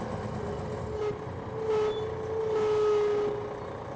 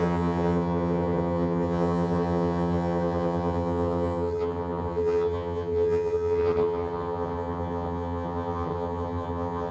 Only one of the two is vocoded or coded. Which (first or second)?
second